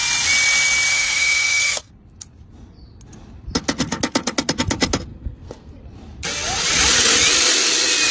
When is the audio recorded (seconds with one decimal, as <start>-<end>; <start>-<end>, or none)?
0.0-0.9; 1.9-5.1; 5.7-8.1